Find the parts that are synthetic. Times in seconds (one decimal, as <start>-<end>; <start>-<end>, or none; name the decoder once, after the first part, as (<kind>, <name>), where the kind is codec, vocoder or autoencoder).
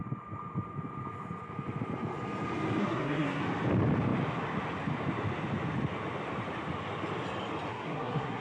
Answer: 2.8-3.4 (codec, SNAC); 7.7-8.4